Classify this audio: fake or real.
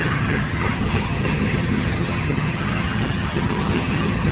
fake